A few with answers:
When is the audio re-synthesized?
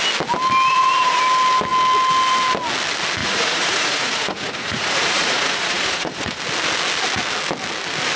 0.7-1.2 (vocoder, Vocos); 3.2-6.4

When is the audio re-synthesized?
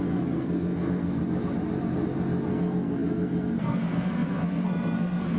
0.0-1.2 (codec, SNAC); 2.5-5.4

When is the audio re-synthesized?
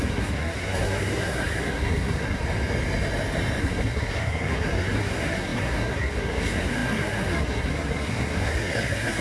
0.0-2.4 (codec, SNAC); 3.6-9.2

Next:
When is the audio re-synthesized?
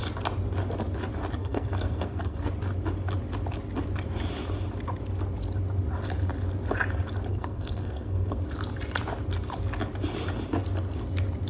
1.4-2.5 (codec, SNAC); 7.3-8.4